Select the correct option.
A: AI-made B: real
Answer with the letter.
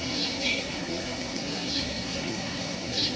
A